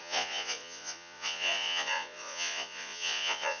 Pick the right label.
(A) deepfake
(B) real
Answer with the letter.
A